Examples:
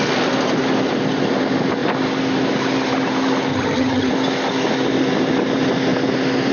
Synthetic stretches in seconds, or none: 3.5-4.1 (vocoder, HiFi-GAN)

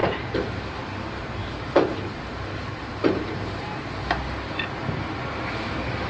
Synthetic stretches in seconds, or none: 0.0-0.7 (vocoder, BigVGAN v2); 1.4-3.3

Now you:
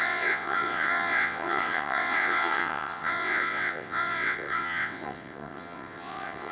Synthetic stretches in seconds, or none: 0.0-6.5 (vocoder, WaveNeXt)

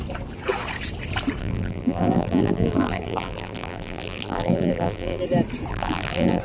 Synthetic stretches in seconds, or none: 1.4-5.2 (vocoder, BigVGAN v2); 5.7-6.4

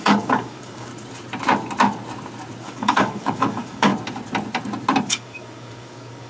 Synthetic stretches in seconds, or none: 0.0-0.9 (codec, DAC); 2.6-3.9; 5.1-6.3